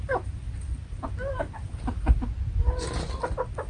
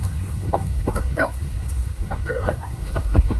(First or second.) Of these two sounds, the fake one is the second